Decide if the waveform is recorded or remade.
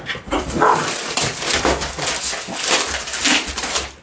recorded